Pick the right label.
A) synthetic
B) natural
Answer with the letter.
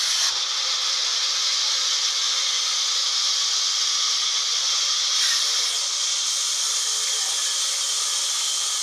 B